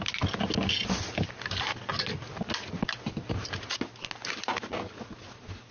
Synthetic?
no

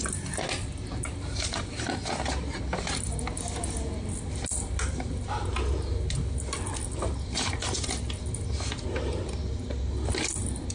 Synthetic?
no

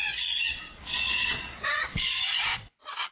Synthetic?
yes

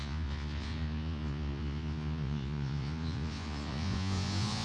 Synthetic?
yes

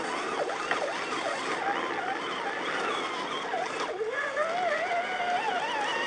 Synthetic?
no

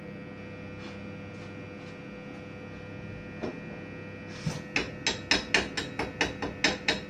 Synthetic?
no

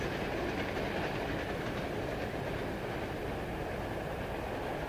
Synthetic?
no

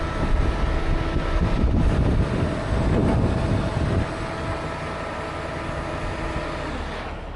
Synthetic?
no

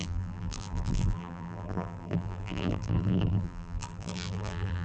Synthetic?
yes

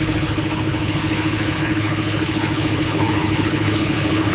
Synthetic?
yes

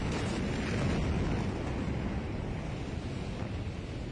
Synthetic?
no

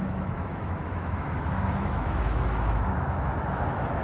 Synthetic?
yes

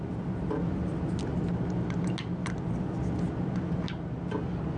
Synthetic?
no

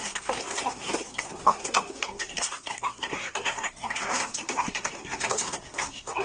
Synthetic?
yes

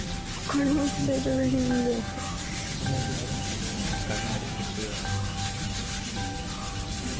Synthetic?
no